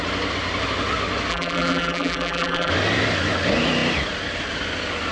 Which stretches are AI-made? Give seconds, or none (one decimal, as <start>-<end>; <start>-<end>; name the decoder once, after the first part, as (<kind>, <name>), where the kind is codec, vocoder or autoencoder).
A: 1.3-2.7 (vocoder, BigVGAN v2)